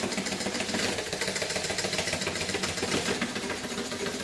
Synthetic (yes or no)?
no